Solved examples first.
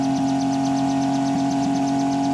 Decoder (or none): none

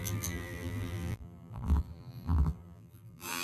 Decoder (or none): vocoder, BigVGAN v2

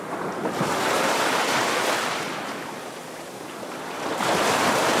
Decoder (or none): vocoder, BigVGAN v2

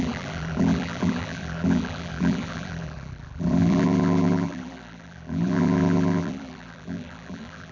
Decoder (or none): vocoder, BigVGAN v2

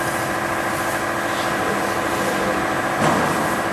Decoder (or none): none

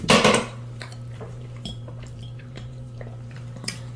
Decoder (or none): vocoder, BigVGAN v2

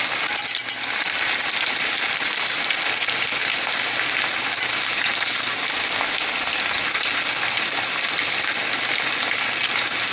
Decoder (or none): none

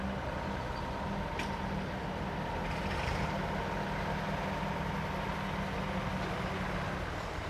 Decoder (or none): none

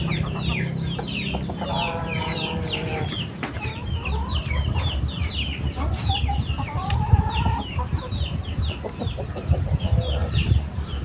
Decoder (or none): vocoder, BigVGAN v2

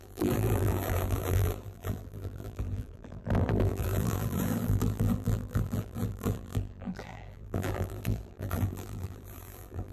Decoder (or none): vocoder, BigVGAN v2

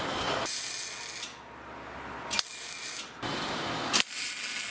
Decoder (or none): none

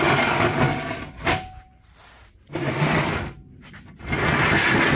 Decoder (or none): none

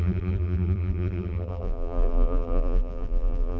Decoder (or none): vocoder, BigVGAN v2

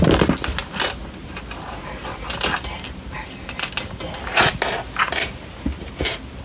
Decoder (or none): none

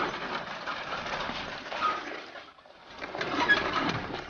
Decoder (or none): vocoder, BigVGAN v2